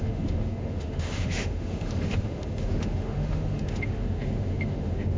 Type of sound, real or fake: fake